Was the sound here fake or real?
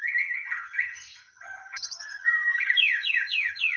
fake